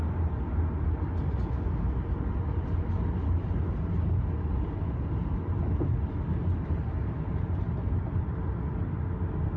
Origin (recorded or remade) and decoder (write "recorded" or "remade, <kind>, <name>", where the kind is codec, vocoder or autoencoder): recorded